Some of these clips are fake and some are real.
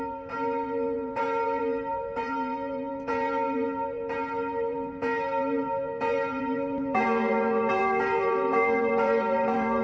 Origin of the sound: fake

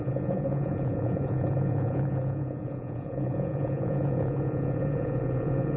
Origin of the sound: fake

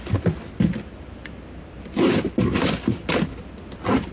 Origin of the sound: real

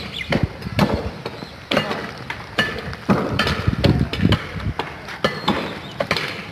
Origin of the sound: real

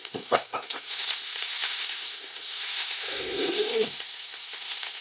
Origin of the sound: fake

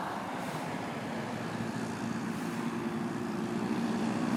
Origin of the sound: fake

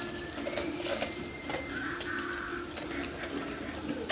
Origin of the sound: real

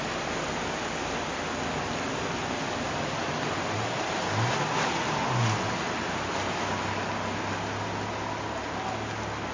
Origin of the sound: real